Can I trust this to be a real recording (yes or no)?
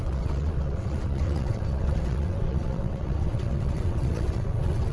no